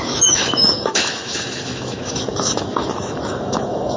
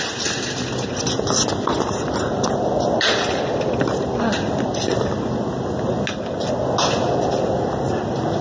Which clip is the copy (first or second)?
first